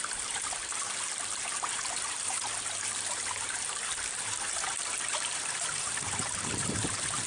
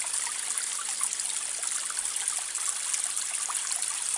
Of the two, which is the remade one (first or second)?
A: first